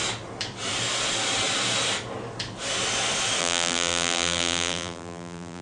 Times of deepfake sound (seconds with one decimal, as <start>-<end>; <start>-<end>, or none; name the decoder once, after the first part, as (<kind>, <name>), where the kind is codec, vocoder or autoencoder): 3.4-5.6 (vocoder, BigVGAN v2)